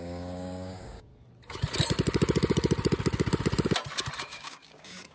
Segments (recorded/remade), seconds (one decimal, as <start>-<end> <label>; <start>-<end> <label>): 0.0-1.1 remade; 1.1-4.2 recorded; 4.2-5.1 remade